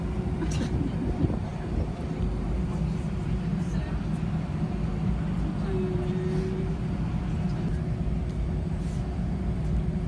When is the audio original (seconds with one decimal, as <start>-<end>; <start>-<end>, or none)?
0.0-10.1